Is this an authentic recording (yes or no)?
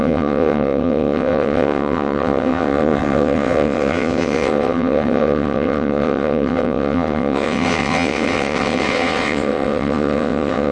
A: no